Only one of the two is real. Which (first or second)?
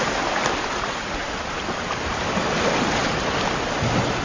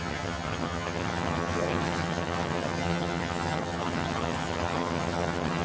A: first